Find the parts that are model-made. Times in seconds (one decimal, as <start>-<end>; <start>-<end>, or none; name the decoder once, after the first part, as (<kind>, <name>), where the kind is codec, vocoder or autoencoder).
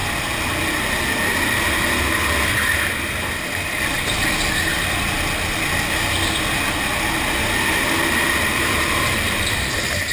8.5-9.7 (vocoder, BigVGAN v2)